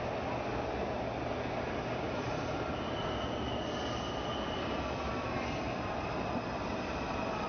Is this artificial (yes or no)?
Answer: no